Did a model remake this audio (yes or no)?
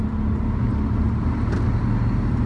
no